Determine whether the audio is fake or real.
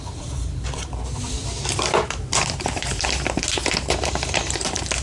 fake